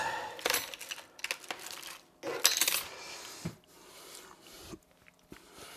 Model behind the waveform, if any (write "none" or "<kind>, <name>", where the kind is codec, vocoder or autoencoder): none